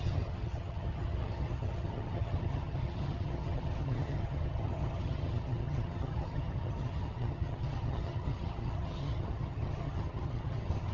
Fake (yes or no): yes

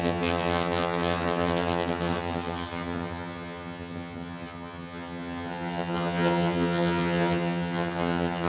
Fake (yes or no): yes